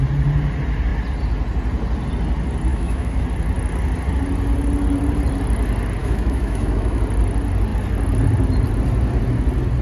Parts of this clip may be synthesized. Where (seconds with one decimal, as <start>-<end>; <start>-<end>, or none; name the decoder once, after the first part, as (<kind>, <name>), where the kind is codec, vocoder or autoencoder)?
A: 2.7-3.2 (autoencoder, DAC-VAE); 6.0-7.0